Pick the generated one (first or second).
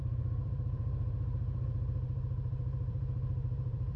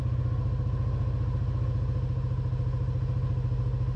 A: first